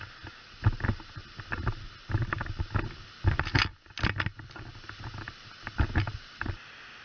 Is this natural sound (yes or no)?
yes